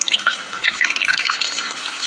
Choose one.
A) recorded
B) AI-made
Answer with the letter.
B